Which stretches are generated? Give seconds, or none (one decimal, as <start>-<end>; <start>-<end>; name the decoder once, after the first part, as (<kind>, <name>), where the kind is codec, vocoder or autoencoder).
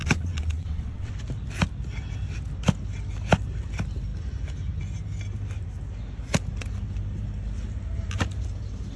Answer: 0.0-1.1 (vocoder, WaveNeXt)